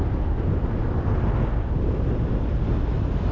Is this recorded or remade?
recorded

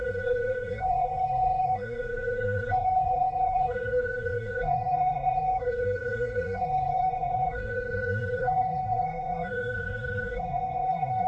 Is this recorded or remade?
remade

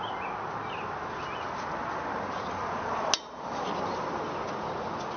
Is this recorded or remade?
recorded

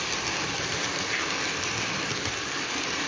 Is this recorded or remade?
recorded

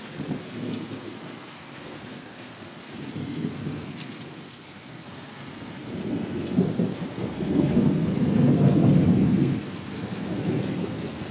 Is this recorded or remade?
remade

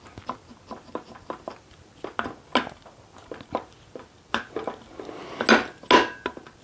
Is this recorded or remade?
recorded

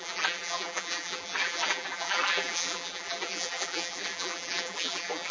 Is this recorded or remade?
remade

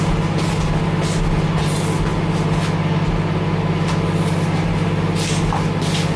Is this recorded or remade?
recorded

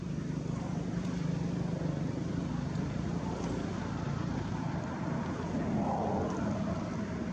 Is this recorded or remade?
remade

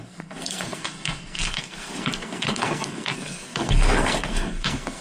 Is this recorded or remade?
remade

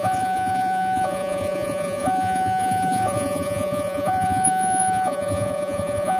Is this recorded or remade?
remade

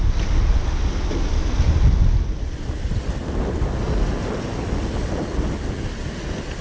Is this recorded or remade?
recorded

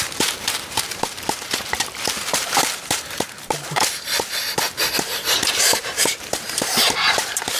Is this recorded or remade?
remade